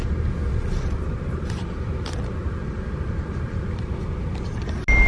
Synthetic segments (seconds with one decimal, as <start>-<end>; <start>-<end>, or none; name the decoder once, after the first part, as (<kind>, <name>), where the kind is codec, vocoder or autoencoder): 0.9-4.0 (vocoder, BigVGAN v2)